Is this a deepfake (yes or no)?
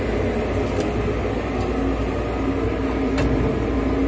no